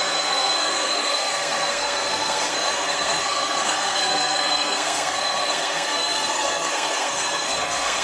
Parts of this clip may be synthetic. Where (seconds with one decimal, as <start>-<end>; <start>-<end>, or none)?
0.0-8.0